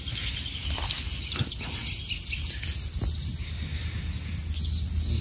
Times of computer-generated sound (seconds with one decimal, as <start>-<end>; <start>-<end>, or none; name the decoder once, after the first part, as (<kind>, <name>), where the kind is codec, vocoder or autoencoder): none